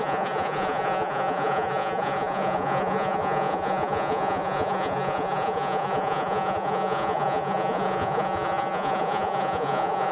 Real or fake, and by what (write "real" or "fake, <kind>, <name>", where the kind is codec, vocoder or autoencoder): fake, vocoder, Vocos